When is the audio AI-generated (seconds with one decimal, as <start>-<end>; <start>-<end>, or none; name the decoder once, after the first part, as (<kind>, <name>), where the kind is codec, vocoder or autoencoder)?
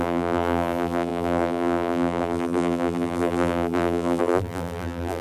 0.0-5.2 (vocoder, BigVGAN v2)